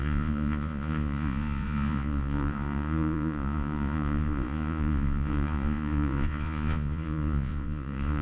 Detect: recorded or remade remade